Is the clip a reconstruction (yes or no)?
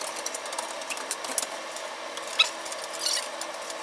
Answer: no